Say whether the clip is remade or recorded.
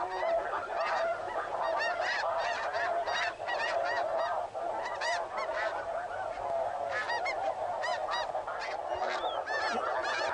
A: recorded